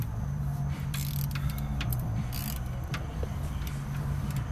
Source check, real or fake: real